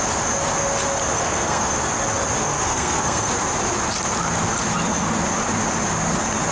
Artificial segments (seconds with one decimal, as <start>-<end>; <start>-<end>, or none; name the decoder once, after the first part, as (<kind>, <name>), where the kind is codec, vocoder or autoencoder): 1.1-1.7 (codec, SNAC); 2.4-3.3